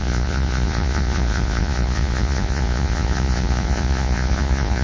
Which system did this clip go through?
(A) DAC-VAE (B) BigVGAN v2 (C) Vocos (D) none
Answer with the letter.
C